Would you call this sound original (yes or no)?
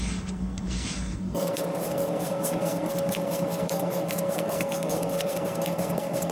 no